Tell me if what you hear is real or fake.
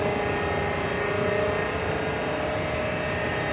real